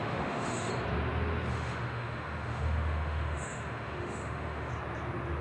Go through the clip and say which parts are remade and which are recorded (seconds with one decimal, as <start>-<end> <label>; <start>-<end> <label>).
0.0-0.7 remade; 0.7-1.5 recorded; 1.5-4.7 remade; 4.7-5.4 recorded